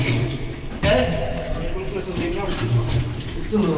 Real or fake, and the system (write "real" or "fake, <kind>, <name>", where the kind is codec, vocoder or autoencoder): fake, vocoder, BigVGAN v2